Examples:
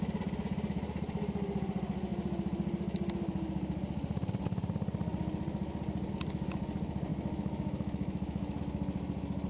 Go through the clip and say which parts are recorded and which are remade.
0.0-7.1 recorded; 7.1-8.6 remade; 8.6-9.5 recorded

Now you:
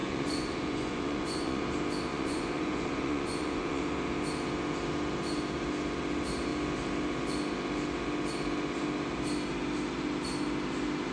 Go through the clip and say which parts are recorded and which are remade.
0.0-1.6 remade; 1.6-2.1 recorded; 2.1-3.8 remade; 3.8-11.1 recorded